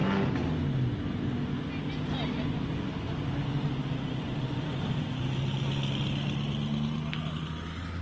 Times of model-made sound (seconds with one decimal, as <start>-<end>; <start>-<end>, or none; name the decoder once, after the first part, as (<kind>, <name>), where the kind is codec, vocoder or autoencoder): none